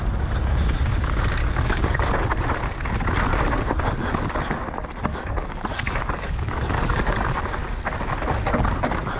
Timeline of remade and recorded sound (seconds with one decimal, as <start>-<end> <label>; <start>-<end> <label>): 0.0-1.4 recorded; 1.4-2.1 remade; 2.1-5.1 recorded; 5.1-7.4 remade; 7.4-9.2 recorded